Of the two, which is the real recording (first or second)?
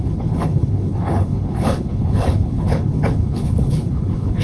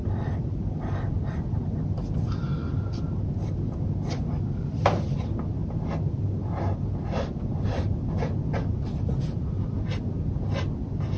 second